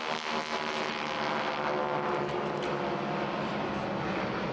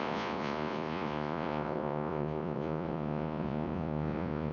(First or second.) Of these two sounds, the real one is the first